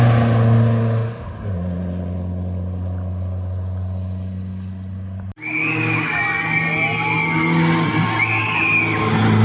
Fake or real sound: real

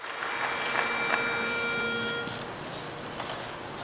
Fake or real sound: real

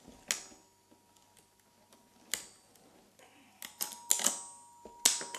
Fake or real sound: real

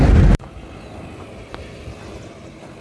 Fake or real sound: real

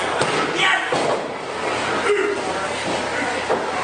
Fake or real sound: real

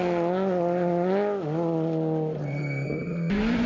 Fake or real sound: real